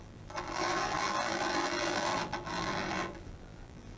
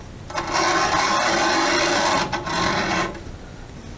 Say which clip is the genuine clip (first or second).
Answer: second